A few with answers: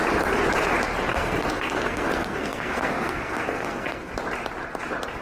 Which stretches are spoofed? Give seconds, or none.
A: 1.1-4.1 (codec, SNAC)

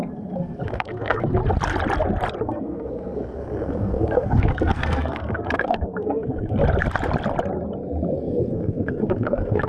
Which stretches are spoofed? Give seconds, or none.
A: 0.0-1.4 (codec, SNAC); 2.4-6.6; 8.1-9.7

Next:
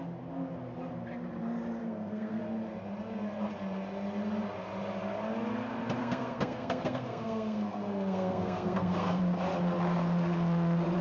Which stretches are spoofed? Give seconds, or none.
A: 1.8-2.4 (codec, SNAC); 6.0-9.2